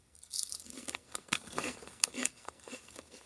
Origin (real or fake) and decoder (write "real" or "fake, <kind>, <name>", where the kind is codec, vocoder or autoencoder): fake, codec, SNAC